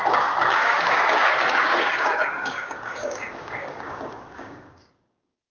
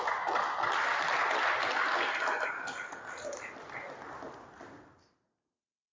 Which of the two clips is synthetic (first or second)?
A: first